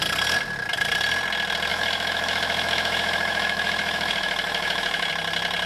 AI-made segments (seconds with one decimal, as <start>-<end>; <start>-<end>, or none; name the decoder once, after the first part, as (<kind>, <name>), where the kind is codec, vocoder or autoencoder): 1.7-5.1 (autoencoder, DAC-VAE)